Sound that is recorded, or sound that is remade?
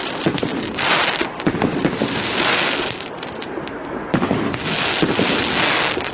recorded